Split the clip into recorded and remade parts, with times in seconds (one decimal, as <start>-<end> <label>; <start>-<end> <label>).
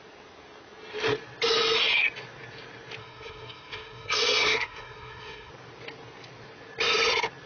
0.0-3.0 recorded; 3.0-5.5 remade; 5.5-7.5 recorded